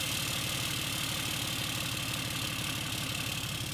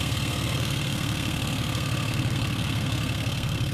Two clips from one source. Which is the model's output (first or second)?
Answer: second